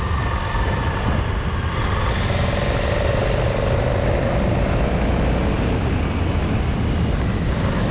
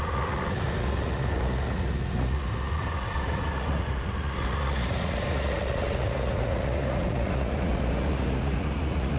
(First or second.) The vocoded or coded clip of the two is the second